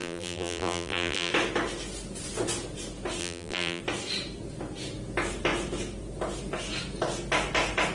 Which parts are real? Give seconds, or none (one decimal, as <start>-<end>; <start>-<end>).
1.3-3.2; 3.8-7.9